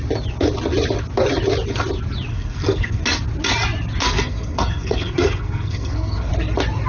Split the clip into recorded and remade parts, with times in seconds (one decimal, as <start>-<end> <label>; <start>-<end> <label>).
0.0-2.3 recorded; 2.3-3.0 remade; 3.0-4.0 recorded; 4.0-6.3 remade; 6.3-6.9 recorded

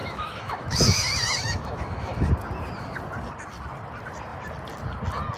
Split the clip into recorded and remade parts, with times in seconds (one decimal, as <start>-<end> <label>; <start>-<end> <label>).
0.0-2.3 remade; 2.3-5.4 recorded

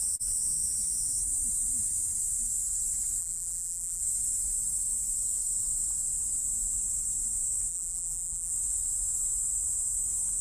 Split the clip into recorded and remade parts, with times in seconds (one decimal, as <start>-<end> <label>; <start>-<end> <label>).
0.0-3.2 recorded; 3.2-4.0 remade; 4.0-7.7 recorded; 7.7-8.5 remade; 8.5-10.4 recorded

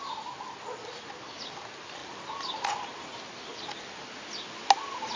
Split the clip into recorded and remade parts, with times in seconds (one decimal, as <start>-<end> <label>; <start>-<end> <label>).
0.0-5.2 recorded

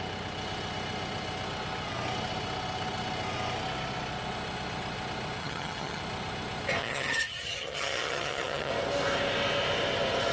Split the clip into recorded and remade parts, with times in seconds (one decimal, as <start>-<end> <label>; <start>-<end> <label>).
0.0-5.4 recorded; 5.4-6.0 remade; 6.0-6.8 recorded; 6.8-8.7 remade; 8.7-10.3 recorded

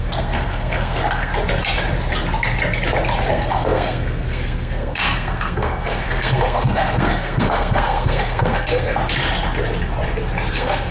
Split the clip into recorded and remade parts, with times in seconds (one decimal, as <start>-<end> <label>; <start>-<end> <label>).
0.0-1.3 remade; 1.3-3.3 recorded; 3.3-9.0 remade; 9.0-10.5 recorded; 10.5-10.9 remade

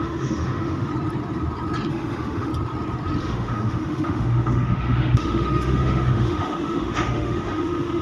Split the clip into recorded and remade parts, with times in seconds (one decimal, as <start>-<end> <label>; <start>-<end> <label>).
0.0-0.9 remade; 0.9-1.9 recorded; 1.9-2.5 remade; 2.5-3.2 recorded; 3.2-8.0 remade